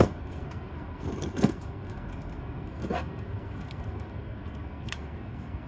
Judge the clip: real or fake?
fake